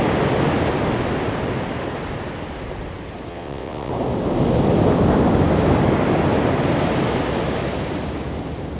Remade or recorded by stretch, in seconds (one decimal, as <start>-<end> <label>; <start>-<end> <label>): 0.0-3.3 recorded; 3.3-3.9 remade; 3.9-8.8 recorded